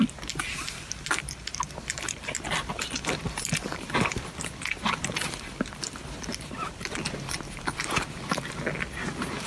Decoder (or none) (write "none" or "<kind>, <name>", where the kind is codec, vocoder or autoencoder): vocoder, BigVGAN v2